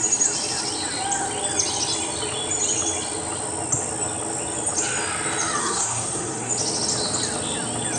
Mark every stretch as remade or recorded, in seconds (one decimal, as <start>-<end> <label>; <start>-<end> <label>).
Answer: 0.0-5.6 recorded; 5.6-6.5 remade; 6.5-8.0 recorded